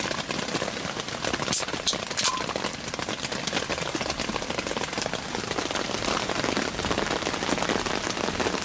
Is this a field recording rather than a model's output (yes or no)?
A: yes